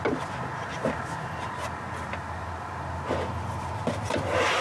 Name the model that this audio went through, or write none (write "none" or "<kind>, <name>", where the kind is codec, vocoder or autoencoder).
none